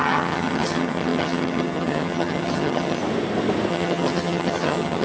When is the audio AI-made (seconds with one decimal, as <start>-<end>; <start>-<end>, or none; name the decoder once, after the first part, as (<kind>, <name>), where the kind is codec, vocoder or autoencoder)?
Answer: 0.0-3.0 (vocoder, HiFi-GAN); 3.7-5.0